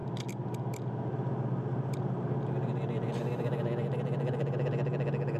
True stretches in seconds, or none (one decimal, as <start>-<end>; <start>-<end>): 0.0-5.4